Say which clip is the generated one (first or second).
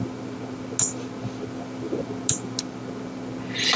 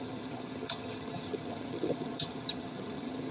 second